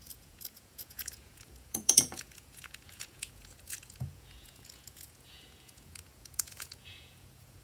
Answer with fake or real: fake